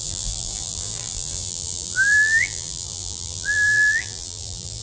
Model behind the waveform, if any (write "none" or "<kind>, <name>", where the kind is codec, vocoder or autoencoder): vocoder, BigVGAN v2